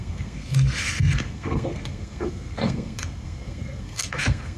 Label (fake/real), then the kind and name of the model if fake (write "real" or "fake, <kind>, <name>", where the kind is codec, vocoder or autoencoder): fake, codec, SNAC